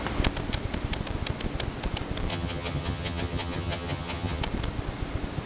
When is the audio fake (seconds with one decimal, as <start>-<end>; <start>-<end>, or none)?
2.3-4.4